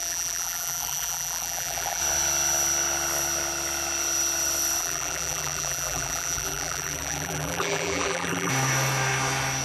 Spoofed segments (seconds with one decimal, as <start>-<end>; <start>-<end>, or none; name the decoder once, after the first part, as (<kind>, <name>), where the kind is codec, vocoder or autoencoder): 0.0-2.0 (vocoder, BigVGAN v2); 4.8-8.5